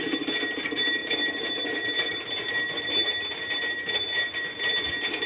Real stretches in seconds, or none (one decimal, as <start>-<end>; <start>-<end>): 0.0-5.3